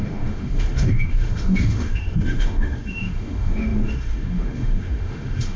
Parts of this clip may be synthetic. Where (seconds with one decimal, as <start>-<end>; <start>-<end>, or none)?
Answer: 0.0-5.6